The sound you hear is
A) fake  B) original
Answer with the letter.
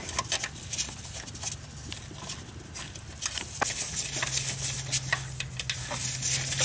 B